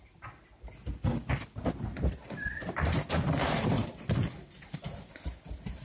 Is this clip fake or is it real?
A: real